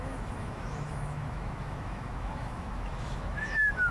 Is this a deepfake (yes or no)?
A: yes